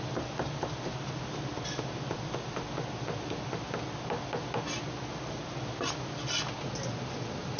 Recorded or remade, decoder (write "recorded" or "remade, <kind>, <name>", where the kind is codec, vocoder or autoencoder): recorded